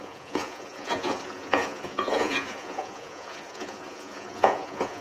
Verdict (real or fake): fake